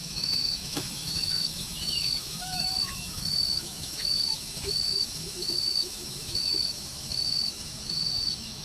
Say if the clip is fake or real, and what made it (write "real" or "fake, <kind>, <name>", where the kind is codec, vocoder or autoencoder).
fake, autoencoder, DAC-VAE